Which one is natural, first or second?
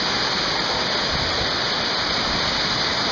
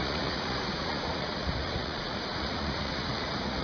first